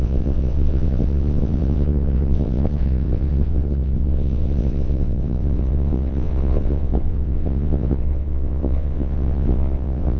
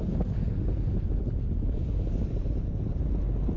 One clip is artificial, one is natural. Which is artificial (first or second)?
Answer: first